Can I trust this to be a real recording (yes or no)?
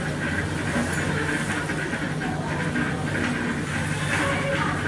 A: yes